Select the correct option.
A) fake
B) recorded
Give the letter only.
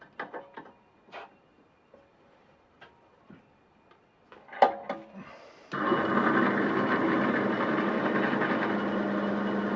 B